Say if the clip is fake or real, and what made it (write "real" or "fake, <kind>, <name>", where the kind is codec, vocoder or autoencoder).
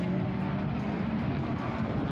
real